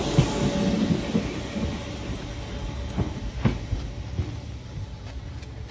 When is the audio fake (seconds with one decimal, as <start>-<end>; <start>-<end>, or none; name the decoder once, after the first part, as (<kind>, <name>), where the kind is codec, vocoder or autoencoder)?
none